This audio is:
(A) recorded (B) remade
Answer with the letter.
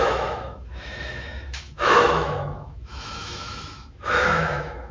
B